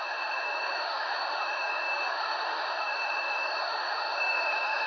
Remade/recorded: remade